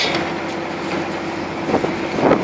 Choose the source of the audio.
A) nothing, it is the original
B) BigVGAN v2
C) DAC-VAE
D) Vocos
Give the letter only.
A